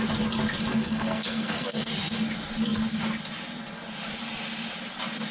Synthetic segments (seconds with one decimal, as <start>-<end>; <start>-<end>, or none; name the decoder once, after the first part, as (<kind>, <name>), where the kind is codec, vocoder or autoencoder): 0.7-1.9 (codec, SNAC)